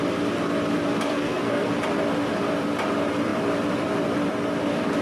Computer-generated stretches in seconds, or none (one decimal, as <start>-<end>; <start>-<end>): 1.1-1.7